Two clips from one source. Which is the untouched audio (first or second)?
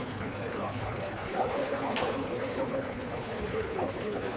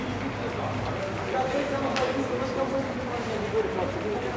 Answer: second